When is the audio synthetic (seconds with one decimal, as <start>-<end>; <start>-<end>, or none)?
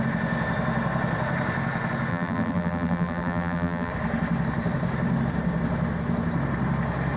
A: 2.1-3.9